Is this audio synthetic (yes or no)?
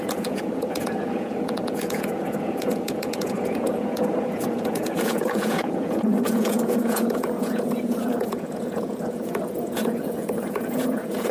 yes